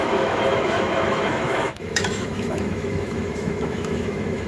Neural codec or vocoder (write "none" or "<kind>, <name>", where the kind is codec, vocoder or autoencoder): autoencoder, DAC-VAE